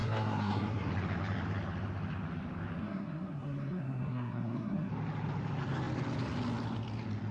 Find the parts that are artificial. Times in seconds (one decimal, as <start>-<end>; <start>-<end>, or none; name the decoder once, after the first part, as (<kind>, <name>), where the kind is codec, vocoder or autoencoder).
0.0-0.9 (codec, SNAC); 2.8-4.9